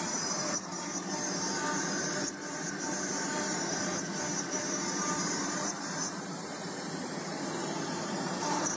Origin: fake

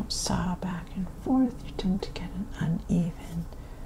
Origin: fake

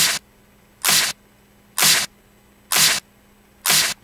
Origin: real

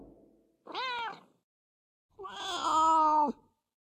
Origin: real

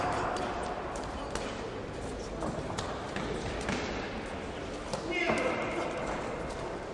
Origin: real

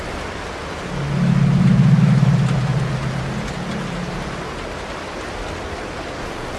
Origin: real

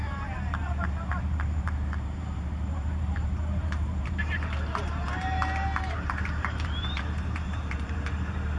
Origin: fake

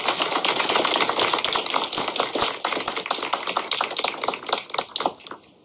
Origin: real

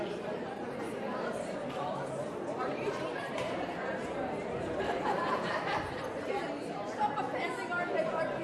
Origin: fake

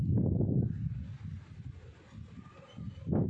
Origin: real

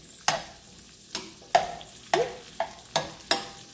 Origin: real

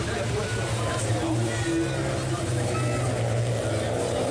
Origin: real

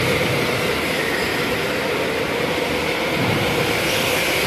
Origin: real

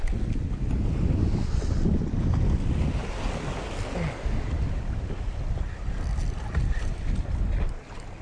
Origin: real